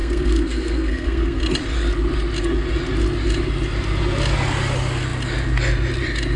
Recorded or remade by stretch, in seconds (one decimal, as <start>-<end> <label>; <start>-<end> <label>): 0.0-1.4 remade; 1.4-6.4 recorded